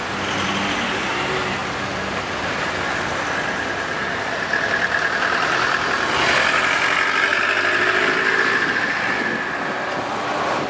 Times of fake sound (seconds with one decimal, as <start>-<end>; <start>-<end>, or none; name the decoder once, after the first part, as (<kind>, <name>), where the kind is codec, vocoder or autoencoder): none

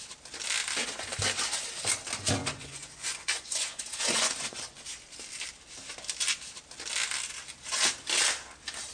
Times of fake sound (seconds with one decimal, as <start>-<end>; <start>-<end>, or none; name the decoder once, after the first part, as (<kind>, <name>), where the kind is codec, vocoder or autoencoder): 2.4-4.8 (vocoder, Vocos)

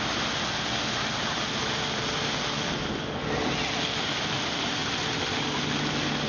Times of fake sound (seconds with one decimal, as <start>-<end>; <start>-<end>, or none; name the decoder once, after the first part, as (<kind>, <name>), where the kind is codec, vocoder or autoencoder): none

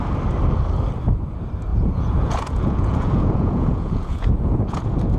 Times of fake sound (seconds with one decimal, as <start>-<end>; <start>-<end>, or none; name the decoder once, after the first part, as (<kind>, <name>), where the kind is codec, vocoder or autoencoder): 1.7-4.8 (vocoder, Vocos)

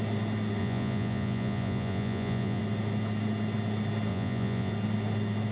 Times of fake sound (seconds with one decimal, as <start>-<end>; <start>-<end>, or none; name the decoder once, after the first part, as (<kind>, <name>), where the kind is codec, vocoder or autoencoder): 0.6-2.6 (vocoder, Vocos); 4.1-4.7

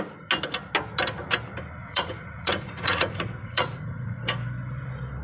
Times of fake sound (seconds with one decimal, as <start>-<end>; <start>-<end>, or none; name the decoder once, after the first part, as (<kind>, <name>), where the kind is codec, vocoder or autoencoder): 1.8-4.2 (vocoder, Vocos)

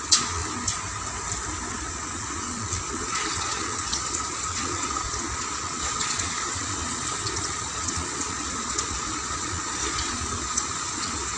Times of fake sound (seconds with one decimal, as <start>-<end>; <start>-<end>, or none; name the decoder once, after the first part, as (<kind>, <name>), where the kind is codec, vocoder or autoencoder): 0.0-0.4 (vocoder, Vocos); 1.7-11.4

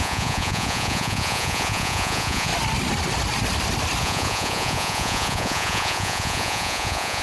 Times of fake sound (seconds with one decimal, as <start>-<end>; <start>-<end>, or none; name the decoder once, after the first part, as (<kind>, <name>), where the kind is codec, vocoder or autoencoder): 0.0-2.5 (vocoder, Vocos); 4.0-7.2